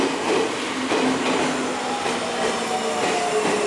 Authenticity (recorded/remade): recorded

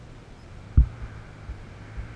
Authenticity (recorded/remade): recorded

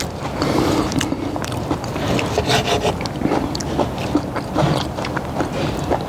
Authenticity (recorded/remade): remade